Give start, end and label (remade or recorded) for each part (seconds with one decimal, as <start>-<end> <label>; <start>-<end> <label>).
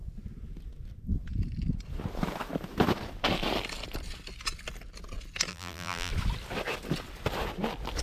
0.0-5.5 recorded; 5.5-6.1 remade; 6.1-8.0 recorded